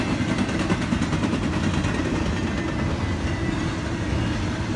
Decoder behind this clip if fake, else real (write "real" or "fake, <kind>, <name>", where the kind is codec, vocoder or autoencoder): real